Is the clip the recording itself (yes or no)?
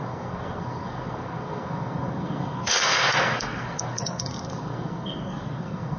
no